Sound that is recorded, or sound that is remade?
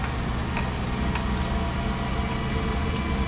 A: recorded